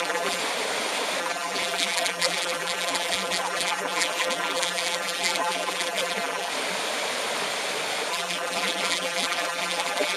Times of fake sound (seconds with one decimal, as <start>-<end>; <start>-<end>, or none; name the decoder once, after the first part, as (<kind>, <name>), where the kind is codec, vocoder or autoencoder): 0.0-0.4 (vocoder, BigVGAN v2); 1.2-6.5; 8.1-10.2